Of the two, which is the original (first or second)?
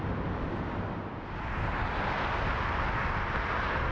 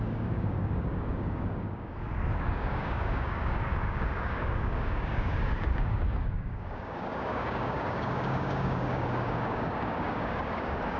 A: first